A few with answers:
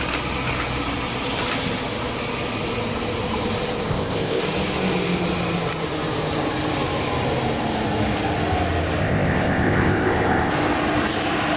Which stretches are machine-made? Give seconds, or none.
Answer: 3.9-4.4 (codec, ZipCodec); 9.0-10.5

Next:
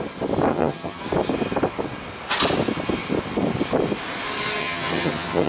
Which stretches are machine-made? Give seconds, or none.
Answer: 0.5-1.0 (vocoder, HiFi-GAN); 4.6-5.5

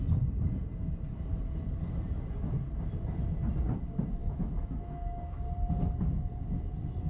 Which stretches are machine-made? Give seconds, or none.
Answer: 4.2-5.5 (autoencoder, DAC-VAE)

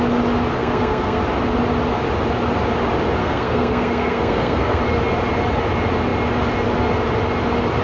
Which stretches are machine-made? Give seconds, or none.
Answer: 0.6-1.2 (codec, SNAC); 3.2-4.8

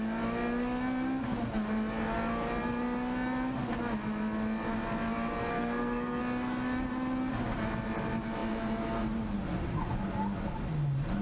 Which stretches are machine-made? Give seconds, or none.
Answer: 5.5-6.2 (codec, SNAC)

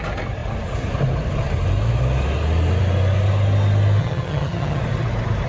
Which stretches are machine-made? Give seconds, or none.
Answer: 4.0-4.8 (vocoder, HiFi-GAN)

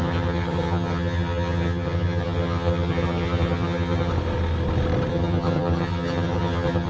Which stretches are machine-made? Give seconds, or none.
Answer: 0.0-4.1 (vocoder, HiFi-GAN); 5.1-6.9